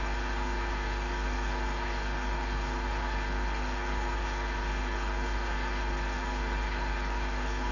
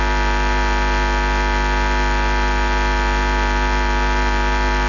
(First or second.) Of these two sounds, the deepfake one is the first